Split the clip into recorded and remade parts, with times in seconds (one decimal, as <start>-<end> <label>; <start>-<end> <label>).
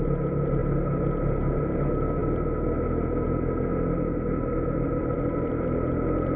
0.0-6.4 recorded